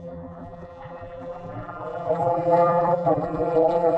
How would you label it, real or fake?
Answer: fake